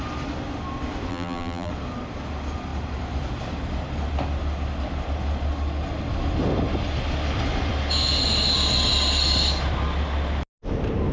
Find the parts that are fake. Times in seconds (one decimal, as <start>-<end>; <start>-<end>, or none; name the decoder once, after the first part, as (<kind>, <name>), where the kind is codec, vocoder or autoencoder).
1.1-1.7 (vocoder, BigVGAN v2)